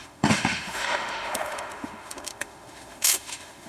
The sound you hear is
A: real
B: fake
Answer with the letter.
B